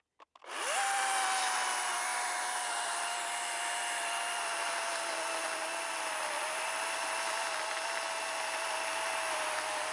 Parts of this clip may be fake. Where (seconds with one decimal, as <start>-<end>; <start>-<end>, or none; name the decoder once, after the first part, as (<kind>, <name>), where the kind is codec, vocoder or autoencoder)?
2.1-2.7 (vocoder, BigVGAN v2)